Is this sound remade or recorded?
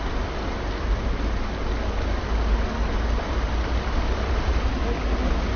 recorded